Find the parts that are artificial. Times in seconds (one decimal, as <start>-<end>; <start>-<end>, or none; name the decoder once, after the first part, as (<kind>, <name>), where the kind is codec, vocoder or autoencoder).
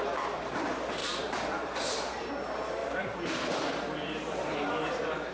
1.0-2.3 (vocoder, BigVGAN v2); 2.8-5.3